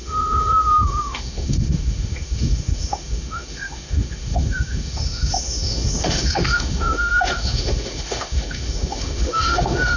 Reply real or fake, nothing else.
fake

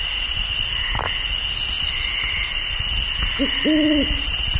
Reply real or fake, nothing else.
real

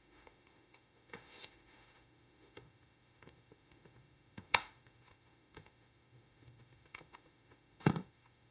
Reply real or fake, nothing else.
fake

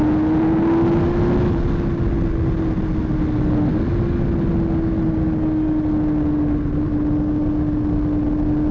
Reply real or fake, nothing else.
real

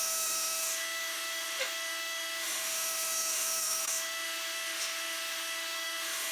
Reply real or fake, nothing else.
fake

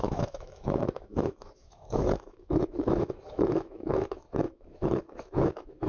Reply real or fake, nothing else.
fake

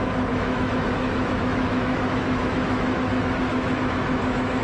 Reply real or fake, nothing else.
fake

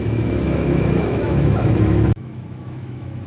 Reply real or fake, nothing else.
fake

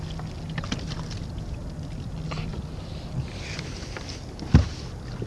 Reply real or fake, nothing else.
real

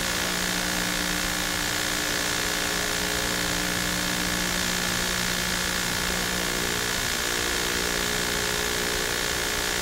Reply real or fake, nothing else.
real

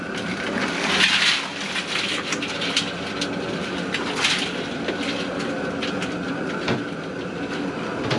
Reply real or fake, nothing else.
real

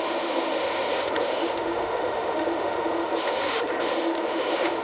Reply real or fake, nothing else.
fake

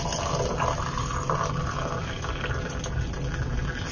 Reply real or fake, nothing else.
real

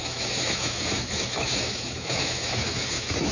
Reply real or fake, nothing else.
fake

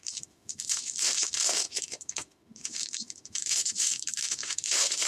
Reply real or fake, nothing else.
fake